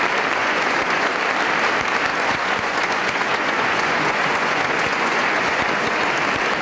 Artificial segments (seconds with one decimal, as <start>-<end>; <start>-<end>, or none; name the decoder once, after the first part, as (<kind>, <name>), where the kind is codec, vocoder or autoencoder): 0.4-1.1 (vocoder, Vocos); 2.1-6.1